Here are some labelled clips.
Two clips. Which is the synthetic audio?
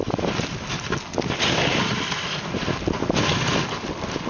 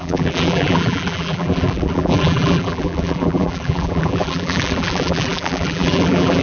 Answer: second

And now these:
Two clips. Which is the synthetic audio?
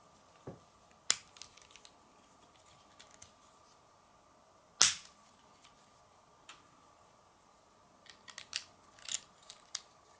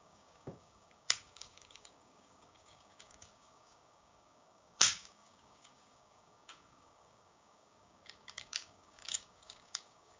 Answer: second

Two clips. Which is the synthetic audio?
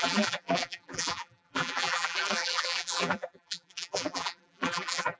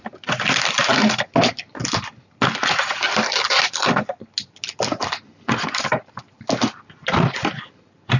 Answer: first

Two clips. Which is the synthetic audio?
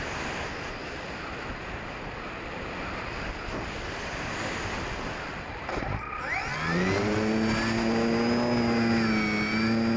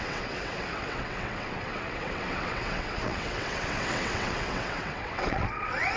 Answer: second